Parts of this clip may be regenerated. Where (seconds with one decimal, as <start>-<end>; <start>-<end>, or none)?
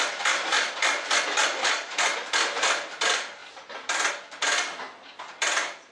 1.4-2.0